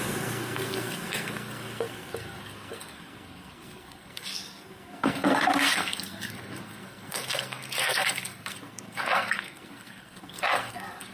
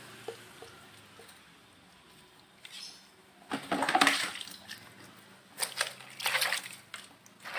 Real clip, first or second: second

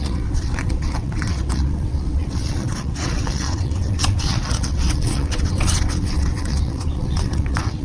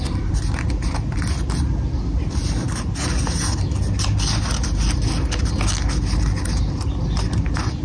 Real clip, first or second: second